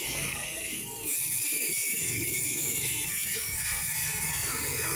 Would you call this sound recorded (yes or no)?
no